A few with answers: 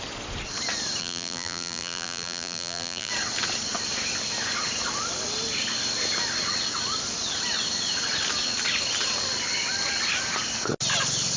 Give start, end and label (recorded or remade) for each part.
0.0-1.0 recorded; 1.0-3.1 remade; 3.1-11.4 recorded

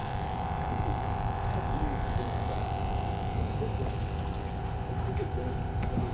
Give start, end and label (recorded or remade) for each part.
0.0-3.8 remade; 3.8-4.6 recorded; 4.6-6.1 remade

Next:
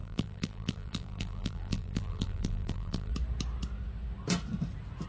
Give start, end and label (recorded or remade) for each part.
0.0-3.1 remade; 3.1-5.1 recorded

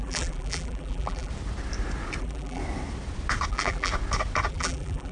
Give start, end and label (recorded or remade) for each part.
0.0-1.3 remade; 1.3-2.2 recorded; 2.2-2.6 remade; 2.6-3.5 recorded; 3.5-3.9 remade; 3.9-4.5 recorded; 4.5-5.1 remade

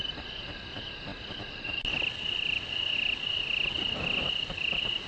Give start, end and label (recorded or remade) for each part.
0.0-5.1 recorded